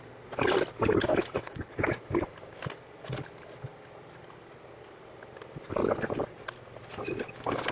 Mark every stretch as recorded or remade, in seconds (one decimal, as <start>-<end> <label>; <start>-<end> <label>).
0.0-1.1 recorded; 1.1-1.7 remade; 1.7-7.7 recorded